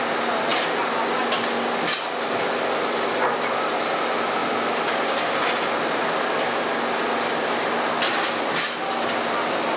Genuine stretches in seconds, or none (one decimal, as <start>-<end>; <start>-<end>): 0.0-9.8